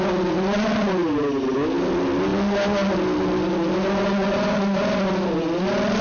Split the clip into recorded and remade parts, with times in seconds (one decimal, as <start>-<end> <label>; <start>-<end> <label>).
0.0-6.0 recorded